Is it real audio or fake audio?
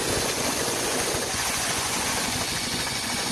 fake